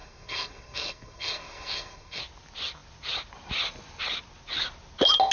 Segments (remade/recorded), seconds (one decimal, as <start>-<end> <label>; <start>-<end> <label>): 0.0-2.2 remade; 2.2-5.3 recorded